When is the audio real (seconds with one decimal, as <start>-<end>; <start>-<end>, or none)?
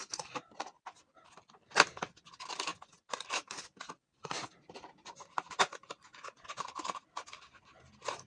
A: 0.0-8.3